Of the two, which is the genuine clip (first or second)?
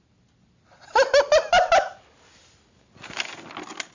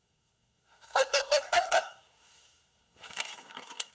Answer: first